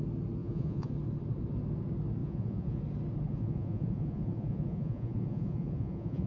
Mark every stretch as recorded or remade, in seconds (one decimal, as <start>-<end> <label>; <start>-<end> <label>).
0.0-0.4 recorded; 0.4-0.9 remade; 0.9-2.2 recorded; 2.2-2.8 remade; 2.8-3.3 recorded; 3.3-6.3 remade

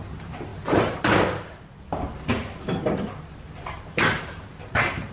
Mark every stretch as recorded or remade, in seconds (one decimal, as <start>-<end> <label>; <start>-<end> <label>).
0.0-5.1 recorded

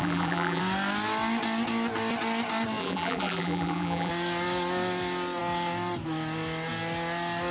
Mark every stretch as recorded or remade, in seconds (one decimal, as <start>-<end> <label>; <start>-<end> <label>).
0.0-0.6 remade; 0.6-2.8 recorded; 2.8-4.1 remade; 4.1-7.5 recorded

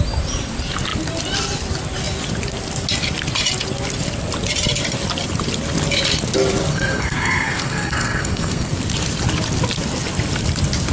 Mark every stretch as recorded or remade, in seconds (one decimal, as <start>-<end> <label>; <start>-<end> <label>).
0.0-6.7 recorded; 6.7-8.7 remade; 8.7-10.9 recorded

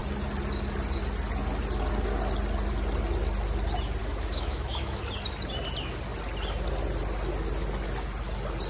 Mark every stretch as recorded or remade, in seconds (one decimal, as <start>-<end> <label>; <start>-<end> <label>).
0.0-4.0 recorded; 4.0-5.0 remade; 5.0-8.7 recorded

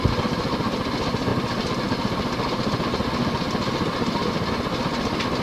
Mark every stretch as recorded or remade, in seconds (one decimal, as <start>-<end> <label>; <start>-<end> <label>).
0.0-5.4 recorded